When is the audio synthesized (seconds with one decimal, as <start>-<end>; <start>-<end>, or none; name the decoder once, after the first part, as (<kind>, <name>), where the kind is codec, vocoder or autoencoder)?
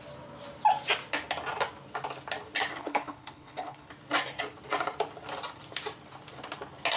2.8-3.9 (codec, HILCodec)